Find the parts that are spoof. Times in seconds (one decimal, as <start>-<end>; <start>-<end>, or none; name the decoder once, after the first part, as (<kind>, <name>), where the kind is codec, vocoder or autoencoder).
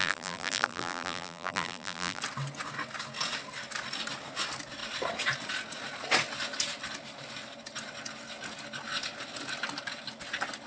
0.0-2.2 (vocoder, BigVGAN v2)